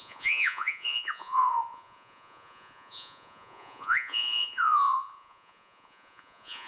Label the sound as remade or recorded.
remade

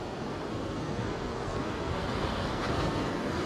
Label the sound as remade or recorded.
remade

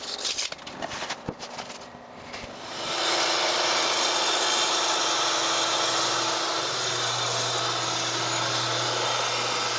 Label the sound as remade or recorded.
recorded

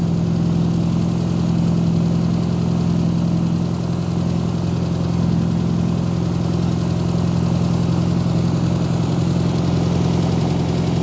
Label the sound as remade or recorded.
recorded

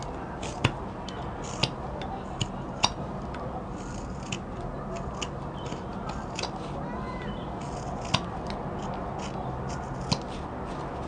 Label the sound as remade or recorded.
recorded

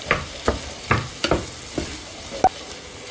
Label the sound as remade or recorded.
recorded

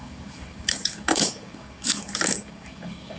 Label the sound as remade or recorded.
remade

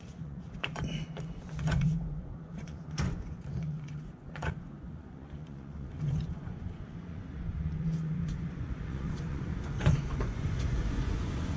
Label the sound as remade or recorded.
remade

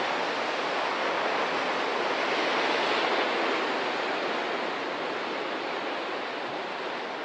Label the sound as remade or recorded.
recorded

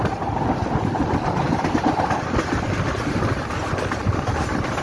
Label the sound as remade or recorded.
recorded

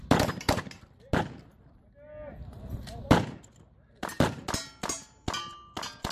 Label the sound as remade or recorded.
recorded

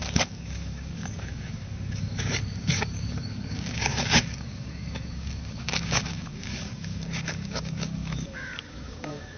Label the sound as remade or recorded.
remade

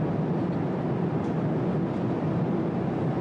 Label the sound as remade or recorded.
recorded